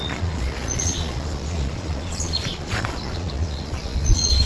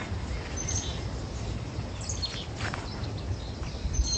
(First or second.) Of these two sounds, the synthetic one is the first